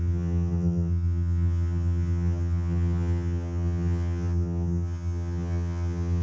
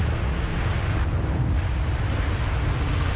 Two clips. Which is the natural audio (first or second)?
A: second